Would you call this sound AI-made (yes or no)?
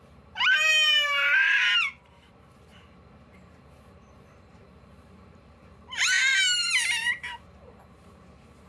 yes